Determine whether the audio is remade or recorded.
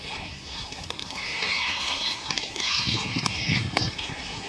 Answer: remade